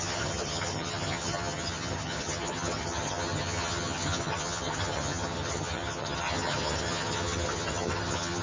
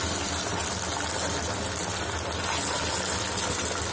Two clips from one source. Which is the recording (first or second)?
second